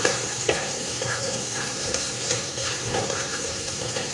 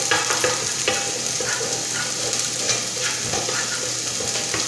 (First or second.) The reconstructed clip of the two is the first